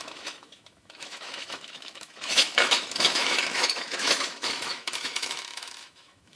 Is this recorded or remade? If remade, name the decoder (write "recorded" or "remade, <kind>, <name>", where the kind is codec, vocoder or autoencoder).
remade, autoencoder, DAC-VAE